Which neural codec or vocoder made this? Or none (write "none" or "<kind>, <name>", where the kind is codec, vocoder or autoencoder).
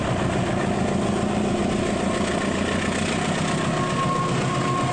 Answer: none